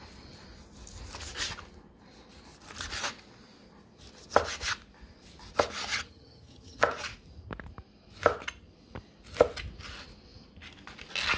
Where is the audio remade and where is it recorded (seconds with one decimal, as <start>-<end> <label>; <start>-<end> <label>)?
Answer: 0.0-5.9 recorded; 5.9-6.8 remade; 6.8-11.4 recorded